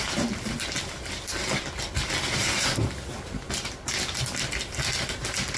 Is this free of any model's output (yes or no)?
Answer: yes